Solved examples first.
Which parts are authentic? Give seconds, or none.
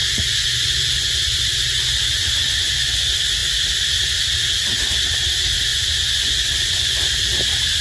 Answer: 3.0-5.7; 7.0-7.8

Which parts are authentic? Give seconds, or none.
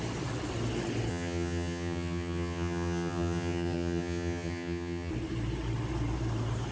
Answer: 0.0-1.1; 5.1-6.7